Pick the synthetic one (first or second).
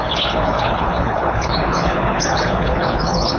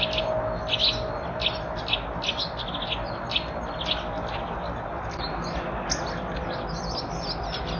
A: first